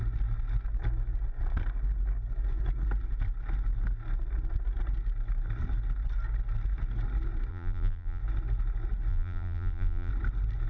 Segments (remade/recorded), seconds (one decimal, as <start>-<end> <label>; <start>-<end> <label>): 0.0-7.5 recorded; 7.5-8.2 remade; 8.2-9.1 recorded; 9.1-10.1 remade; 10.1-10.7 recorded

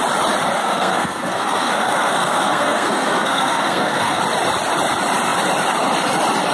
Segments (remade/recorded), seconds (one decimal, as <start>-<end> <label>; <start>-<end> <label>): 0.0-0.6 recorded; 0.6-4.2 remade; 4.2-6.5 recorded